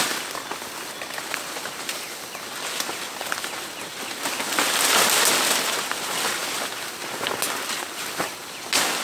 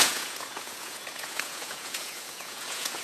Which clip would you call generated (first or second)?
second